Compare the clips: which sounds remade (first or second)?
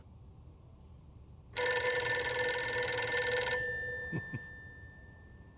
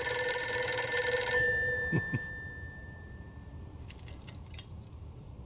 second